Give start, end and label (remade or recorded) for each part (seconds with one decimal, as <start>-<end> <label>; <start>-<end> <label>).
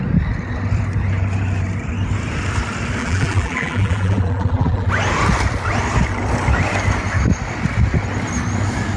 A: 0.0-3.0 recorded; 3.0-4.9 remade; 4.9-9.0 recorded